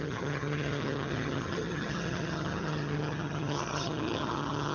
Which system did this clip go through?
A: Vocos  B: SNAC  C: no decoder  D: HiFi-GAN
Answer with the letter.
D